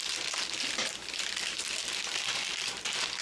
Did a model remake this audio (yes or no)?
no